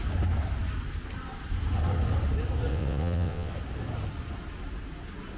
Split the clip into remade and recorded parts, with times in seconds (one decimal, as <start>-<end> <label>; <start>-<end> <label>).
0.0-2.7 recorded; 2.7-3.5 remade; 3.5-5.4 recorded